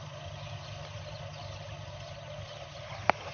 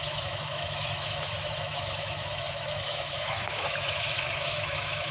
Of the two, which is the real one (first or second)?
first